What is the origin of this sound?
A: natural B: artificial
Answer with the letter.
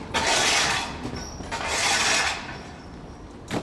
A